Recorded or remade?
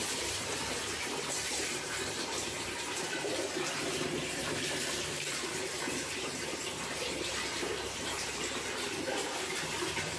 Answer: remade